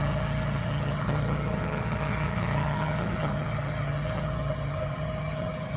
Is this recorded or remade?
remade